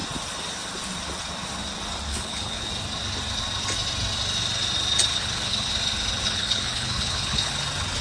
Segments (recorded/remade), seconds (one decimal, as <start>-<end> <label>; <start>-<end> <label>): 0.0-2.1 recorded; 2.1-2.7 remade; 2.7-5.1 recorded; 5.1-5.7 remade; 5.7-6.2 recorded; 6.2-7.5 remade; 7.5-8.0 recorded